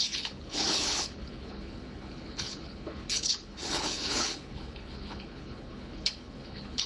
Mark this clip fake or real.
fake